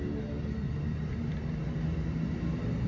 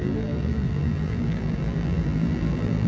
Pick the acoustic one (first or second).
first